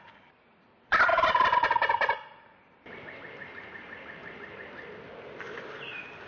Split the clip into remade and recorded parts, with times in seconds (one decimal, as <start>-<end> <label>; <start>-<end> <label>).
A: 0.0-6.3 recorded